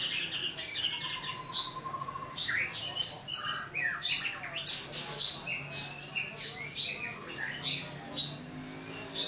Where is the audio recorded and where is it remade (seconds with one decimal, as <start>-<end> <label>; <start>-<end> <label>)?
0.0-0.4 recorded; 0.4-0.9 remade; 0.9-9.3 recorded